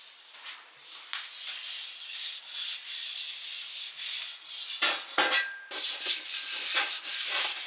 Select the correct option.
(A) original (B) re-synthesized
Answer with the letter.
A